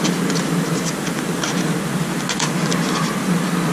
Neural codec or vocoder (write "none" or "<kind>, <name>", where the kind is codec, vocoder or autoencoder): none